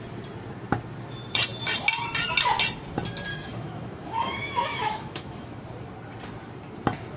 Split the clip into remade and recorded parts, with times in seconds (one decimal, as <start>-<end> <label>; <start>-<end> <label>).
0.0-3.3 recorded; 3.3-5.6 remade; 5.6-7.2 recorded